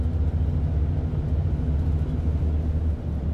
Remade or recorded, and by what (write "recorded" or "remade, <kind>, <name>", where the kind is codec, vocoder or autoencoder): recorded